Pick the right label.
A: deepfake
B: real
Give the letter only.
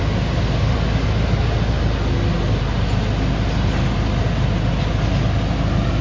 B